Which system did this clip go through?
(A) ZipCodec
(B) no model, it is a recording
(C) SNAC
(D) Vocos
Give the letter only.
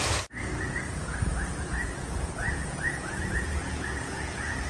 D